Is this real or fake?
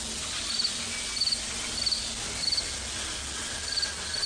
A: real